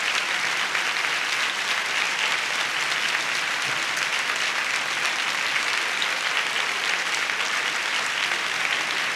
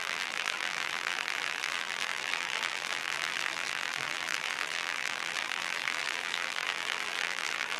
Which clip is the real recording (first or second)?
first